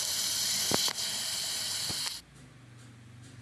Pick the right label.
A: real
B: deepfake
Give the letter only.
A